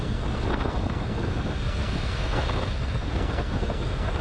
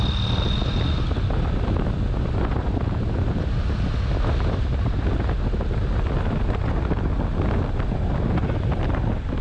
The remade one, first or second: first